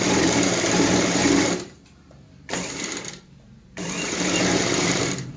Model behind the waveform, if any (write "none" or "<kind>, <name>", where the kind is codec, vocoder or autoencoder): vocoder, BigVGAN v2